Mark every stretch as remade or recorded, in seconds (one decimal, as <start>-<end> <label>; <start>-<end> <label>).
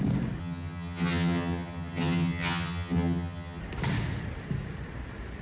0.0-0.4 recorded; 0.4-3.6 remade; 3.6-5.4 recorded